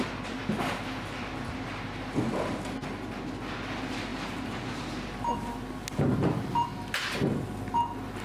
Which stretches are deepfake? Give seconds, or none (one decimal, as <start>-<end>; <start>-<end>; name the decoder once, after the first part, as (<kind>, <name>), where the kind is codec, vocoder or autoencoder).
none